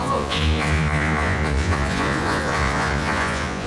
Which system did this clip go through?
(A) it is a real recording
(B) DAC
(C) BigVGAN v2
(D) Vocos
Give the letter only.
D